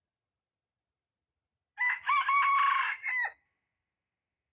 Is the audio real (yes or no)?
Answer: no